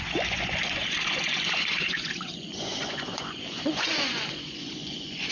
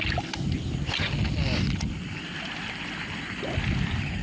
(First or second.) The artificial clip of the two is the first